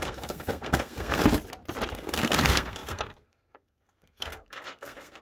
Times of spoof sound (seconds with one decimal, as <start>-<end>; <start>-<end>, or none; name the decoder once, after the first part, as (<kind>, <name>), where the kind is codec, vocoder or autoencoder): 0.0-1.2 (codec, SNAC); 1.9-5.2